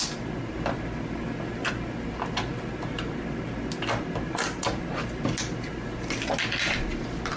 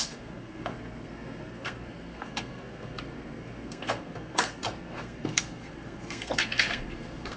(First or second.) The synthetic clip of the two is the second